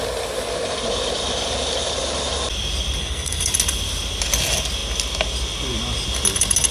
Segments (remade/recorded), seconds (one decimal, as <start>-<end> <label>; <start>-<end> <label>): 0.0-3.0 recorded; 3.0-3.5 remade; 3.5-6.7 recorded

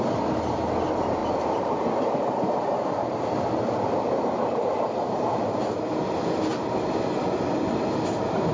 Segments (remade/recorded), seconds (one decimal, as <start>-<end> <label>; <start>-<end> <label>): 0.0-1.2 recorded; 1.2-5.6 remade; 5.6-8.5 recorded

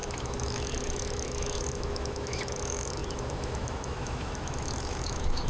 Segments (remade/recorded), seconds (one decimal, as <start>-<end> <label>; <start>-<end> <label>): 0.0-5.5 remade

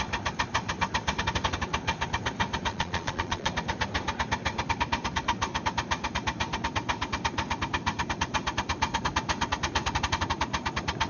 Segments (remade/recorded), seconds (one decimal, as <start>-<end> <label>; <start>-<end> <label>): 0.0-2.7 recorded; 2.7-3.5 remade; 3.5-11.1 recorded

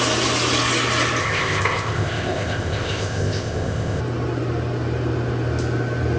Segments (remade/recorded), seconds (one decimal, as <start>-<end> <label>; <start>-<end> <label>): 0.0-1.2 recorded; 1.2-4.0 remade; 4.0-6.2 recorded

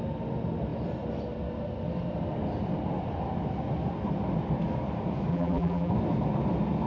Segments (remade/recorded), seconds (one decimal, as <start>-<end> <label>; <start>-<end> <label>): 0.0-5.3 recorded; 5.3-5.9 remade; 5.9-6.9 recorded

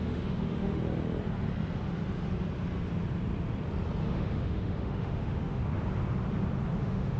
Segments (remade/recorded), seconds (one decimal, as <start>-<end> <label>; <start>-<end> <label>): 0.0-0.8 remade; 0.8-4.0 recorded; 4.0-5.6 remade; 5.6-6.8 recorded; 6.8-7.2 remade

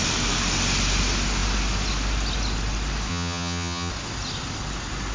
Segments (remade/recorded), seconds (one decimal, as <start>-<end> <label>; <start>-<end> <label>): 0.0-3.1 recorded; 3.1-3.9 remade; 3.9-5.1 recorded